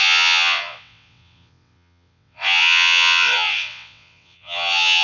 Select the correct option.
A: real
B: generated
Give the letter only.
B